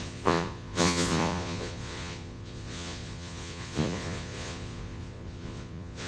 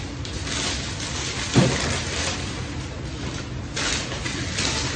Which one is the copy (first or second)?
first